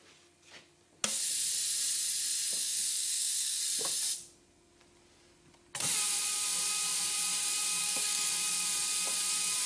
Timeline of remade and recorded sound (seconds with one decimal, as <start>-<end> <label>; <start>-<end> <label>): 0.0-2.6 recorded; 2.6-3.6 remade; 3.6-7.8 recorded; 7.8-8.3 remade; 8.3-9.7 recorded